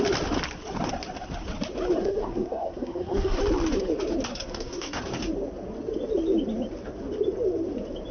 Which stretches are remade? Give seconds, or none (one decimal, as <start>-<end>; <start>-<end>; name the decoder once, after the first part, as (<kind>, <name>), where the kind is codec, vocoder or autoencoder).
2.0-3.4 (codec, SNAC); 4.3-5.0

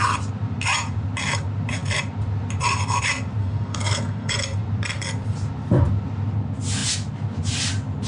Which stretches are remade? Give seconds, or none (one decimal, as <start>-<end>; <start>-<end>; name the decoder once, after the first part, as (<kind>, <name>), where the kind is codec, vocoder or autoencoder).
3.4-4.3 (codec, SNAC)

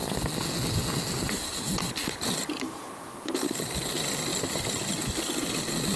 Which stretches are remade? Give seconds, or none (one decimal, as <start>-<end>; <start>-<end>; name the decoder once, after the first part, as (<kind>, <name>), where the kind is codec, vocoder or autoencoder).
none

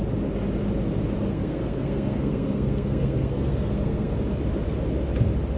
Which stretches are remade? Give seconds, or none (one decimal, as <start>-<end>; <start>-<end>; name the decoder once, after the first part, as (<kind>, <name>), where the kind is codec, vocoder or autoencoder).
1.3-4.1 (codec, SNAC)

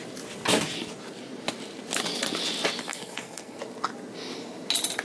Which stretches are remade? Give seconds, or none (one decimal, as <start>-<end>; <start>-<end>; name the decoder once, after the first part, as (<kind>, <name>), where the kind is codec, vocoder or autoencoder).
2.8-3.6 (codec, SNAC)

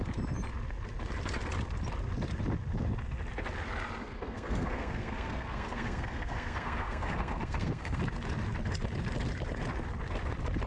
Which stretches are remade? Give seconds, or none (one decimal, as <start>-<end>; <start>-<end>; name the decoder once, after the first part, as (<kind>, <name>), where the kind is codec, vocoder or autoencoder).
4.0-8.0 (codec, SNAC)